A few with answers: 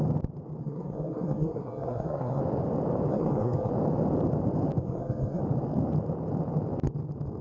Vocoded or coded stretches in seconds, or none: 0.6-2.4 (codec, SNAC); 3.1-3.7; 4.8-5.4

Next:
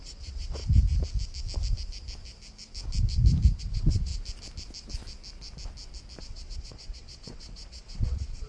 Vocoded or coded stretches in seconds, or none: 0.0-0.6 (vocoder, WaveNeXt); 3.6-4.1; 6.2-8.5

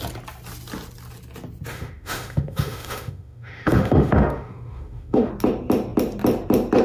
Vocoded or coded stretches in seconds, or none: 1.7-5.3 (autoencoder, DAC-VAE)

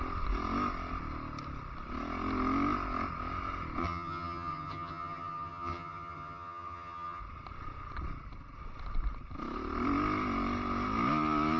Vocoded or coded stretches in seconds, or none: 3.8-7.2 (vocoder, HiFi-GAN)

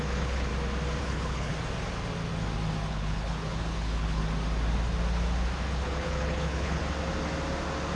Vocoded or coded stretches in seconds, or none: 0.0-0.5 (codec, HILCodec); 1.0-1.5; 2.9-4.2; 5.7-6.8

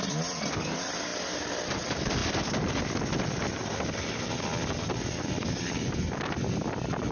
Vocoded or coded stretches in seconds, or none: none

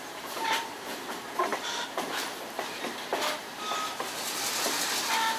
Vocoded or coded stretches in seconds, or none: 0.0-3.1 (vocoder, BigVGAN v2)